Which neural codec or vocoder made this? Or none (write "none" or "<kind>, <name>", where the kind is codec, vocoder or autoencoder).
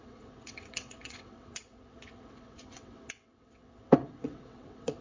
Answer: vocoder, WaveNeXt